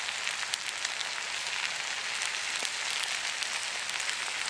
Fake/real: real